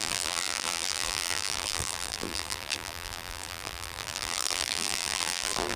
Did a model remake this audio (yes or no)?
yes